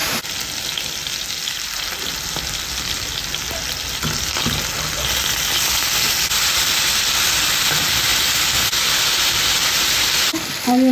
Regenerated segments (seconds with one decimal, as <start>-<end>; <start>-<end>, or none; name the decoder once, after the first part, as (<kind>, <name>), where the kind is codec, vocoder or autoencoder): none